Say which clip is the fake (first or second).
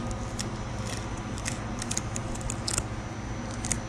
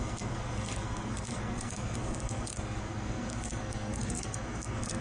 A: second